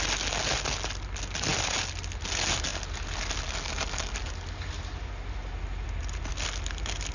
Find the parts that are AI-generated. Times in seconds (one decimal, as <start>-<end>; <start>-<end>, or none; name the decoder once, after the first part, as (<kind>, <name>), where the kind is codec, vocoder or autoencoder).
none